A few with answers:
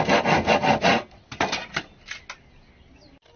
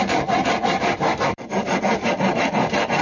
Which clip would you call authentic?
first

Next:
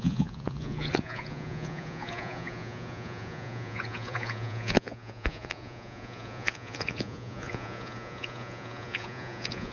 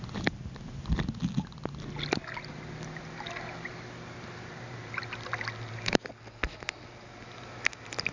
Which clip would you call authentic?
second